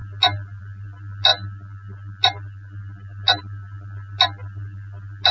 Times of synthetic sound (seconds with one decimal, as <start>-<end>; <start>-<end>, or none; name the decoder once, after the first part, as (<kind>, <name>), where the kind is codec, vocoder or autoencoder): none